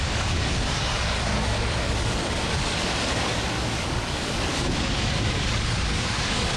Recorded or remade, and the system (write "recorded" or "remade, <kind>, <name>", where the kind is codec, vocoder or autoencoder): remade, codec, DAC